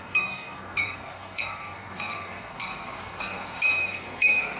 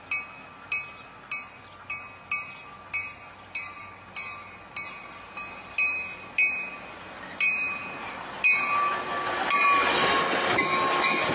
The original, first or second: second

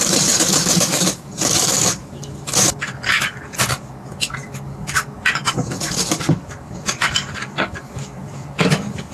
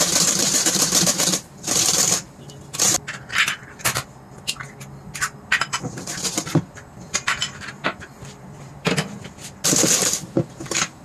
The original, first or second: second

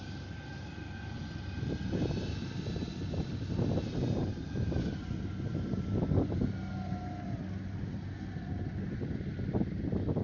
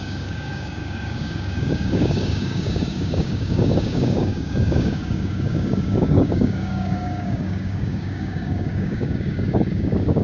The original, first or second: first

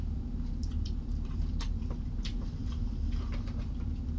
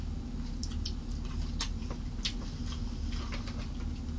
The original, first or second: second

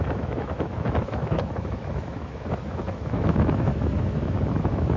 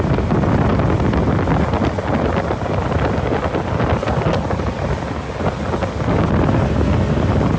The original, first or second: second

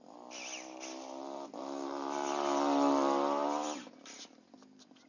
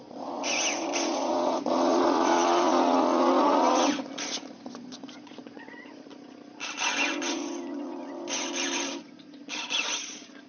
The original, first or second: first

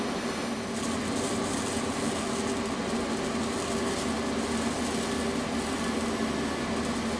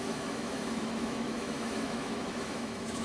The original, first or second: first